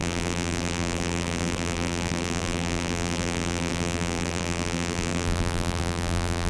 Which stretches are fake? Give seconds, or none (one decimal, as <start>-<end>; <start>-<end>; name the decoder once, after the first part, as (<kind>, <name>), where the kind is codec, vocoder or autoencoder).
0.0-6.5 (vocoder, BigVGAN v2)